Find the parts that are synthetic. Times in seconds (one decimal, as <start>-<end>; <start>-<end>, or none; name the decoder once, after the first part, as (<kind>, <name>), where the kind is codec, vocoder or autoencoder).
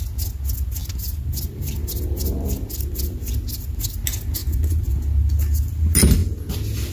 none